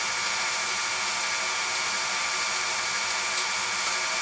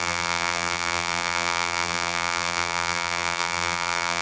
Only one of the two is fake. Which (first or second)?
second